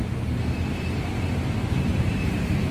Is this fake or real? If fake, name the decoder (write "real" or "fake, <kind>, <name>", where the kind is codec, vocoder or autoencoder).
real